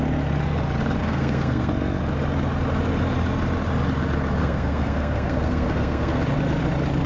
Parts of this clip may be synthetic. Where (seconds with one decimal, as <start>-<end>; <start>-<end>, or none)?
1.0-1.7; 4.4-6.2